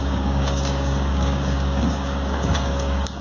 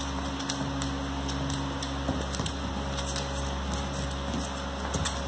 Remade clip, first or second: first